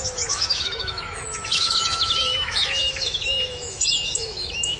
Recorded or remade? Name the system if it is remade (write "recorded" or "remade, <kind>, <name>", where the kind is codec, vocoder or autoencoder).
remade, autoencoder, DAC-VAE